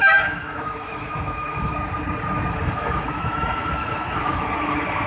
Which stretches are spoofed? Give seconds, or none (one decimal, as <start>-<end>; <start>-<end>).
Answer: 0.0-1.7; 2.5-5.1